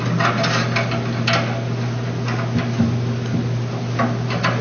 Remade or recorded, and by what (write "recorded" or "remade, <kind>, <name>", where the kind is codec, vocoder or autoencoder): recorded